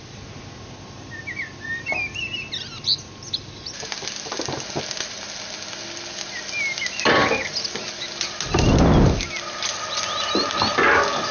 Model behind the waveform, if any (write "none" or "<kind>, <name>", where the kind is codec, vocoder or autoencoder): none